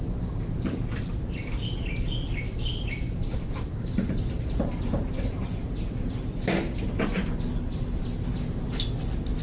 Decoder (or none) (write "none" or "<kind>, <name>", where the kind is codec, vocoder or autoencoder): none